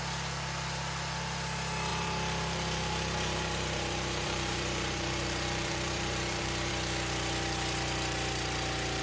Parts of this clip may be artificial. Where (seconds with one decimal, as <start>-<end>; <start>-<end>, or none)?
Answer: 1.9-6.7

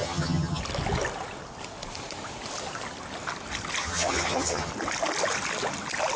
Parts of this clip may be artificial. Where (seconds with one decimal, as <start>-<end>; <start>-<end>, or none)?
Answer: 0.0-0.6; 3.8-4.7

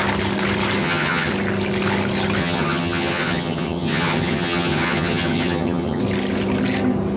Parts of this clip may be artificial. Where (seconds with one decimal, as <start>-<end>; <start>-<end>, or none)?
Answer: 0.8-1.3; 2.4-6.0